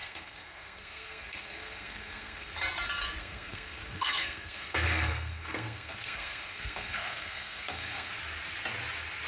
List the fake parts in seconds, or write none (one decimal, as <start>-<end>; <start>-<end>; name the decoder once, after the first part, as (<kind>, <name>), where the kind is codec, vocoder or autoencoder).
0.0-2.5 (codec, SNAC); 3.2-8.1